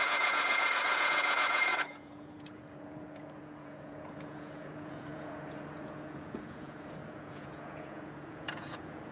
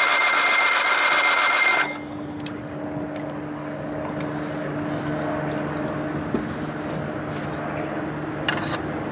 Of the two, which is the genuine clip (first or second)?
second